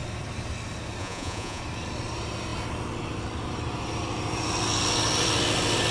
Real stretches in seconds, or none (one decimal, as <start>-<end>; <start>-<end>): 0.0-1.0; 1.6-5.9